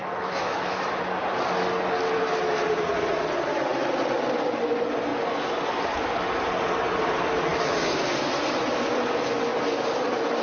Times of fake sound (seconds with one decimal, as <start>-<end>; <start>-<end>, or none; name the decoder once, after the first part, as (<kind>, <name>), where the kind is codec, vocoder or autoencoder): 0.0-1.0 (autoencoder, DAC-VAE); 7.5-8.0